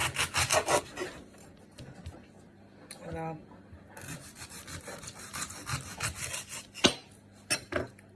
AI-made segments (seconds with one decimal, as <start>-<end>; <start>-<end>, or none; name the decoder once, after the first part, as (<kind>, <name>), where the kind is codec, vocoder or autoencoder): none